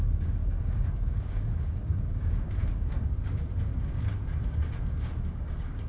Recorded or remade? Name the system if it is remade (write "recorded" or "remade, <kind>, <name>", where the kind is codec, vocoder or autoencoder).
remade, codec, DAC